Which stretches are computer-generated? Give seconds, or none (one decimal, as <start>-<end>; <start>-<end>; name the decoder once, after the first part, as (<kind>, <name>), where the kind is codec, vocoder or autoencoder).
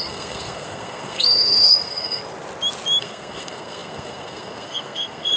0.0-2.2 (codec, SNAC); 3.0-5.4